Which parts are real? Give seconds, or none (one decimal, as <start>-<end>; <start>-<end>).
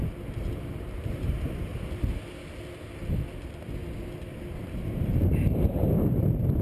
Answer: 0.0-0.7; 1.7-4.6